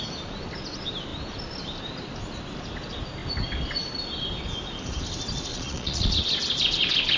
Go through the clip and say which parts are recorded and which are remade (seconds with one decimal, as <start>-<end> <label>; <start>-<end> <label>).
0.0-5.5 recorded; 5.5-6.1 remade; 6.1-7.2 recorded